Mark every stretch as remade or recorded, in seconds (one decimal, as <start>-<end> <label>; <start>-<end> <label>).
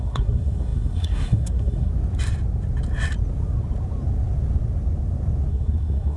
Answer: 0.0-1.9 remade; 1.9-5.5 recorded; 5.5-6.2 remade